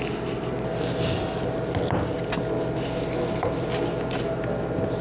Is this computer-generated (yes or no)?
no